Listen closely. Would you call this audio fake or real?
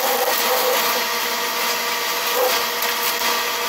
real